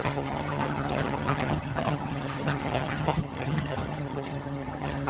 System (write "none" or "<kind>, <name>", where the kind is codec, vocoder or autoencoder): vocoder, HiFi-GAN